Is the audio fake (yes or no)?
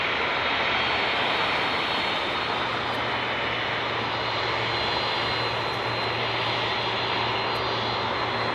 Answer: no